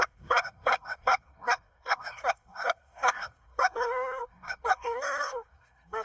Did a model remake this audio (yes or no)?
yes